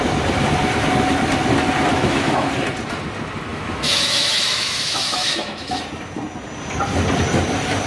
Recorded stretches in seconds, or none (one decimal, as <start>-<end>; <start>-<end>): 0.0-1.9; 2.5-3.5; 5.8-7.9